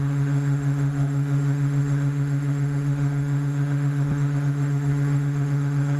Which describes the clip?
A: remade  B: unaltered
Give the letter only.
A